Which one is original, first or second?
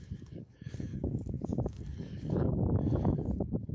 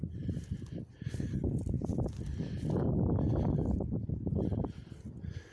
second